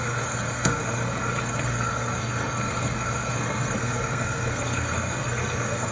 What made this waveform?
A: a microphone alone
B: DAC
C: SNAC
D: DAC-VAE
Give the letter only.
C